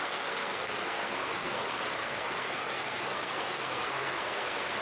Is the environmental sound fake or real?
fake